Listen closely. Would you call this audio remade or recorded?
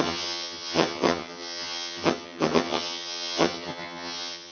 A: remade